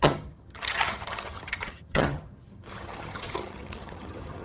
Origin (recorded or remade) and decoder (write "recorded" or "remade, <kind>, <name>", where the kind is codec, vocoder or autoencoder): remade, vocoder, HiFi-GAN